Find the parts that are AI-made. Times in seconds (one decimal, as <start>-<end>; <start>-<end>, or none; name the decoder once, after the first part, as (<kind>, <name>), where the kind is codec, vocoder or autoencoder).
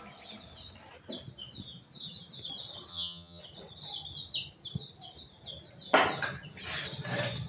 2.9-3.4 (vocoder, HiFi-GAN)